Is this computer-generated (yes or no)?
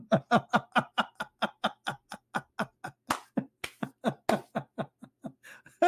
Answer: no